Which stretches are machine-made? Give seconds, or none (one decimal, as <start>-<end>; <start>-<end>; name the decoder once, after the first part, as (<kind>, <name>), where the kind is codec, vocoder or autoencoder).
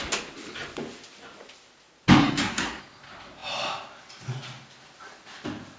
2.2-2.8 (codec, SNAC)